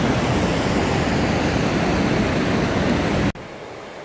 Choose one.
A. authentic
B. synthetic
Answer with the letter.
A